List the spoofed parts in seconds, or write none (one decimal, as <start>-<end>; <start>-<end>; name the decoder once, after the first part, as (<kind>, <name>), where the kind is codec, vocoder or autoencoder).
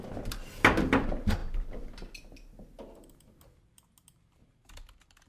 none